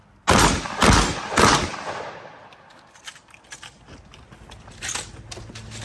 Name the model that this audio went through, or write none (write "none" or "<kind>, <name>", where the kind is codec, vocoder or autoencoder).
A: none